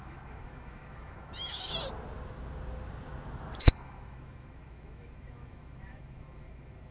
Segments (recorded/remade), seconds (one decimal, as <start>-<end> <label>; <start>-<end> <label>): 0.0-1.7 remade; 1.7-3.6 recorded; 3.6-6.9 remade